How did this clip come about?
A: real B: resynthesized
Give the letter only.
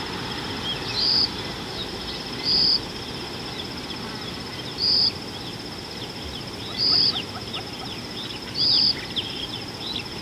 A